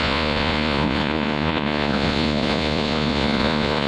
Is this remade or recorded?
remade